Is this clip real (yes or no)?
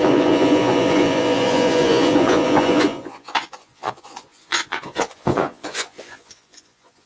no